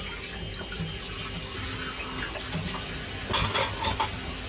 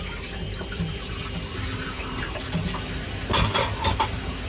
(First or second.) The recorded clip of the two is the first